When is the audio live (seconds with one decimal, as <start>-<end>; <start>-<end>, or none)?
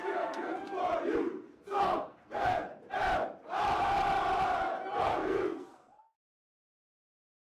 0.5-1.2; 2.7-5.0